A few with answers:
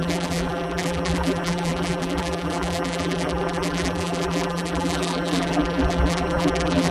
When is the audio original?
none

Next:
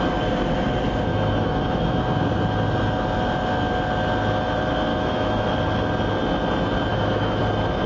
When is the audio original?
0.0-1.1; 2.0-4.9; 5.5-6.9; 7.4-7.9

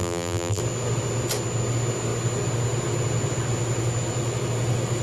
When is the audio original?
0.6-5.0

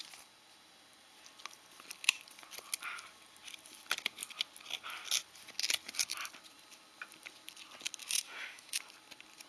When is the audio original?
0.0-8.0; 8.7-9.5

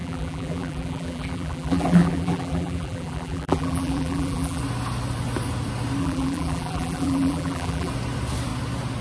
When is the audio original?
4.6-6.0; 7.9-9.0